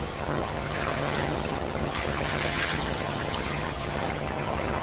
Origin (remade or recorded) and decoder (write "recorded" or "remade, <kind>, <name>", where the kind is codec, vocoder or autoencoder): remade, vocoder, HiFi-GAN